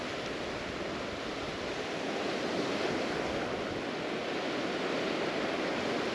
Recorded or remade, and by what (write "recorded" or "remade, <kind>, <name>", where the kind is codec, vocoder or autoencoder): recorded